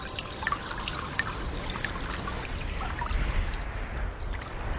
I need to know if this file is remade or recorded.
recorded